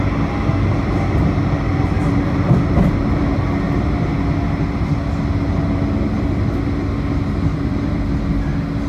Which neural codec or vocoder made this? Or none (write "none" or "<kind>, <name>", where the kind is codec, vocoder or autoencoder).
none